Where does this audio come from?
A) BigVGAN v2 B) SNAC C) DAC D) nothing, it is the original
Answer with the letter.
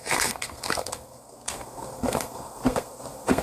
B